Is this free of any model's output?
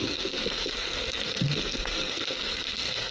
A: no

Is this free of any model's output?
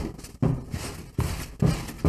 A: yes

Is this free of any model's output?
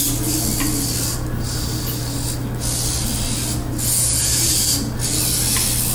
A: yes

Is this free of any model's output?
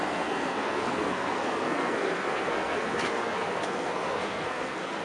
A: no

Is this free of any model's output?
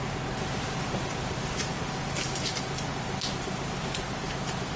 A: yes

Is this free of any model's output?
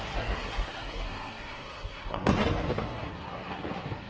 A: no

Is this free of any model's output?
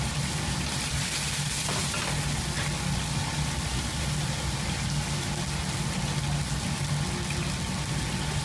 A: yes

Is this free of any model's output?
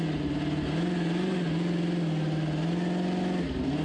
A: yes